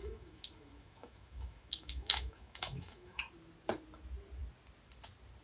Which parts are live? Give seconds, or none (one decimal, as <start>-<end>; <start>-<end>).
3.2-5.4